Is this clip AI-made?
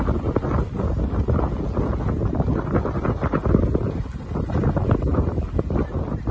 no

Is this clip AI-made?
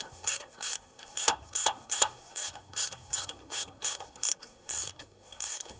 yes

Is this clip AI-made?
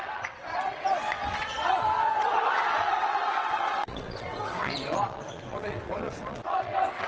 yes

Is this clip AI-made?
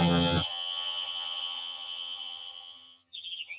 yes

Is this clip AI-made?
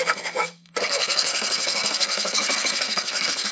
yes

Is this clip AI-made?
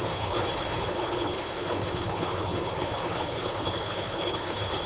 yes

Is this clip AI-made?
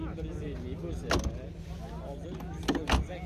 no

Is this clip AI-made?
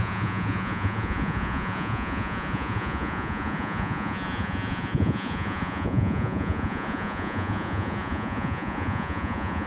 yes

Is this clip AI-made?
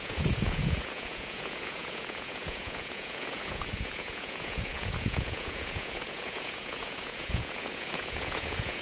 yes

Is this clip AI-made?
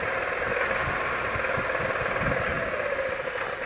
no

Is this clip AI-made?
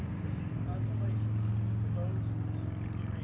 no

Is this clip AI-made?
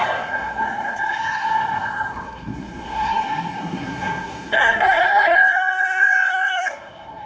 yes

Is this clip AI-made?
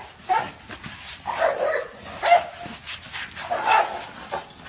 no